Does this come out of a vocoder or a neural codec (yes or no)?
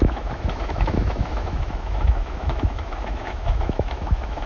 yes